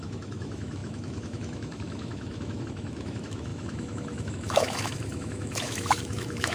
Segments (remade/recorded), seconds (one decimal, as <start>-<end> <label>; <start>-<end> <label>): 0.0-6.5 remade